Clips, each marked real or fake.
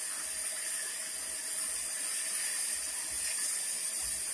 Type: real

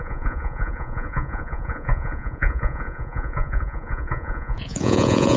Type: fake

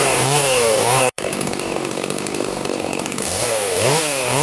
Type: fake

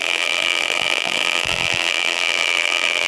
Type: fake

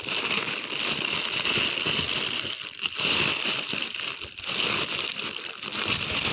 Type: fake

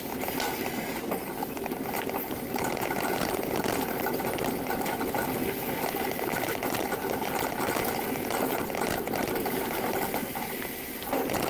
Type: real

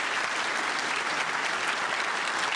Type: real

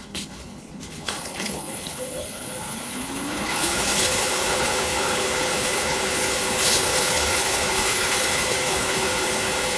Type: fake